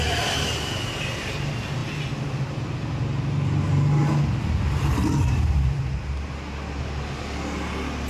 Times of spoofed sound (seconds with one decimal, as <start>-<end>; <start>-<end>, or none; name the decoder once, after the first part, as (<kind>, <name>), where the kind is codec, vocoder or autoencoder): none